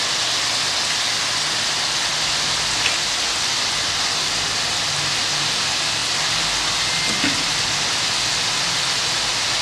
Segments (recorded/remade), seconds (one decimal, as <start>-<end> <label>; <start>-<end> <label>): 0.0-9.6 recorded